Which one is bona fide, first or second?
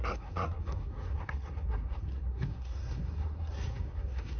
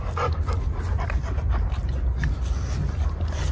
second